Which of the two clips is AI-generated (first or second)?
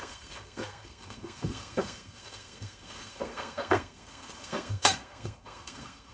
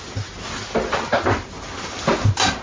first